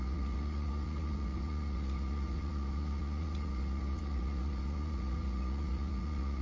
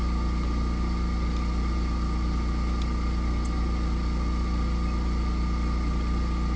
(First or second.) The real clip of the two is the second